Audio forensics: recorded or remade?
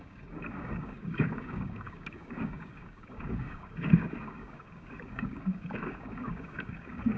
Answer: remade